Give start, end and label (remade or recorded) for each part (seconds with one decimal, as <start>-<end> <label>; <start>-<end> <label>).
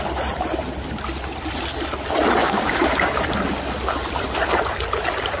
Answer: 0.0-2.4 recorded; 2.4-2.9 remade; 2.9-5.4 recorded